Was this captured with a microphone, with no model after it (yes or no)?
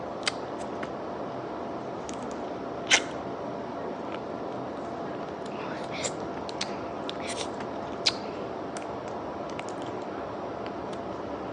yes